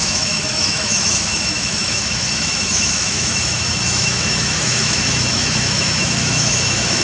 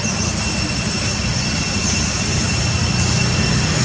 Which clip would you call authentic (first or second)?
second